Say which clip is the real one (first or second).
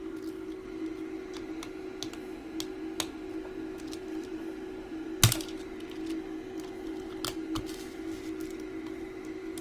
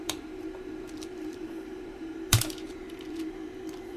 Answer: first